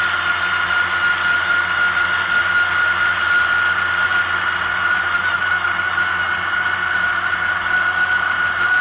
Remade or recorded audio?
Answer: recorded